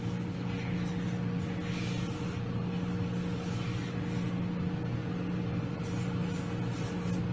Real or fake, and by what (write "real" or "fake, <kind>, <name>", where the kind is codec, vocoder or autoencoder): real